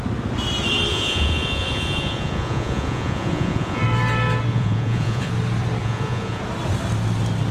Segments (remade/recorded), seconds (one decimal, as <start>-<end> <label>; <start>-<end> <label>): 0.0-0.9 recorded; 0.9-3.8 remade; 3.8-4.5 recorded; 4.5-5.3 remade; 5.3-5.8 recorded; 5.8-6.4 remade; 6.4-7.5 recorded